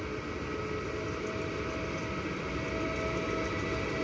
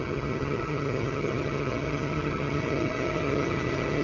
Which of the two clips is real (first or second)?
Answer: first